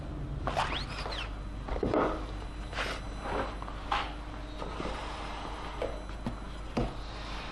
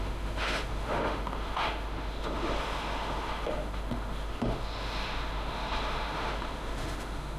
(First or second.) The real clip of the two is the first